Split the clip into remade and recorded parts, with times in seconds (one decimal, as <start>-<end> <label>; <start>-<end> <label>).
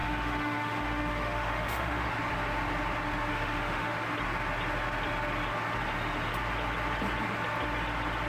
0.0-2.1 remade; 2.1-3.3 recorded; 3.3-3.9 remade; 3.9-8.3 recorded